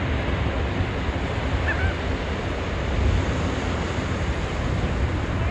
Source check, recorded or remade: recorded